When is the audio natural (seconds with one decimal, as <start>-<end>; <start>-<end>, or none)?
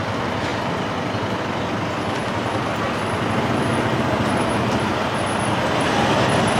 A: 0.0-6.6